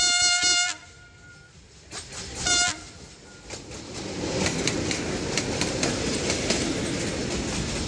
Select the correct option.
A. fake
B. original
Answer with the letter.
B